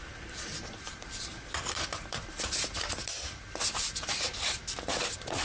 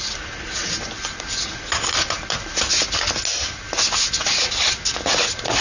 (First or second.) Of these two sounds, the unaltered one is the second